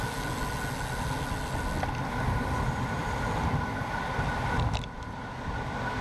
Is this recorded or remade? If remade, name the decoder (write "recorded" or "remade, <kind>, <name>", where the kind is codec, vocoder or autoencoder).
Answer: recorded